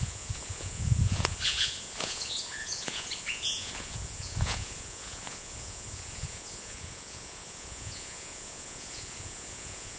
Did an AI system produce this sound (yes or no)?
yes